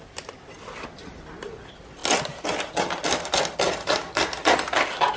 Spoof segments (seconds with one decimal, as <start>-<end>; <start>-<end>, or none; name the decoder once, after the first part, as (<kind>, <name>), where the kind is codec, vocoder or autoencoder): 0.0-2.0 (vocoder, BigVGAN v2); 3.5-5.2